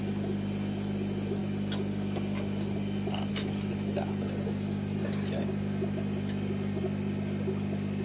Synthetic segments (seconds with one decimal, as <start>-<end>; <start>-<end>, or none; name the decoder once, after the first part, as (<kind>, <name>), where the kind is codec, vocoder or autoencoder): none